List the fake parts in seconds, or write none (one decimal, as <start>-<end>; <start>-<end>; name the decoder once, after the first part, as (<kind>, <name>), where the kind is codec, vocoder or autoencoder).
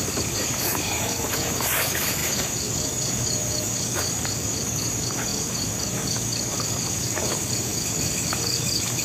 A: 0.0-9.0 (codec, DAC)